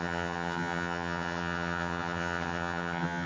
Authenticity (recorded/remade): remade